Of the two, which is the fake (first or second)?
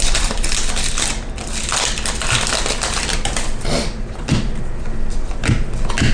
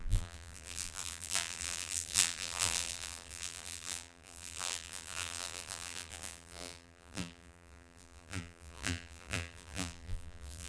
second